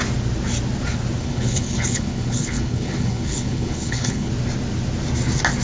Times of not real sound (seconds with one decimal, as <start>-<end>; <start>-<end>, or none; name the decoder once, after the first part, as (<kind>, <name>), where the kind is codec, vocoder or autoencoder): 1.2-4.3 (codec, HILCodec)